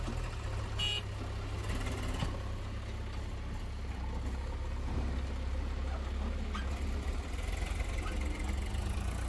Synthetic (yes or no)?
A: no